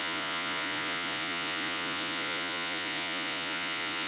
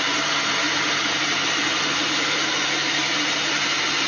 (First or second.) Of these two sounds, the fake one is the first